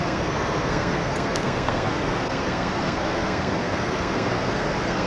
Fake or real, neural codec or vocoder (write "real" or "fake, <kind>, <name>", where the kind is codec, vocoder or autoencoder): fake, codec, SNAC